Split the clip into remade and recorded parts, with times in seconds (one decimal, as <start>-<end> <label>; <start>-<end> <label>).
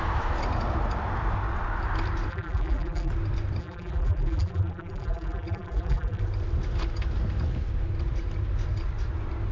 0.0-2.3 recorded; 2.3-3.1 remade; 3.1-3.6 recorded; 3.6-6.2 remade; 6.2-9.5 recorded